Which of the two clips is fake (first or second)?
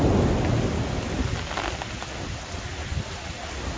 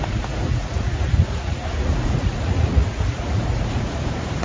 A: second